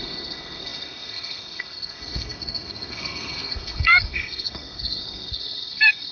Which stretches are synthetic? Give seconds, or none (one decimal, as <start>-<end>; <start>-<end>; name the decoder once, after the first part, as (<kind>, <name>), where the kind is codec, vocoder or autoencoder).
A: 0.0-6.1 (codec, SNAC)